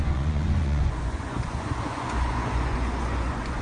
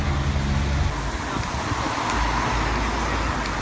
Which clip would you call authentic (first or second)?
second